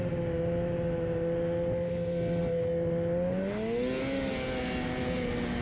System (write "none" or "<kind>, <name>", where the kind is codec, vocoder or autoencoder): none